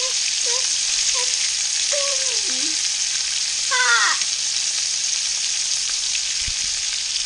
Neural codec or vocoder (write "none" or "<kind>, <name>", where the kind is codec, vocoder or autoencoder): vocoder, BigVGAN v2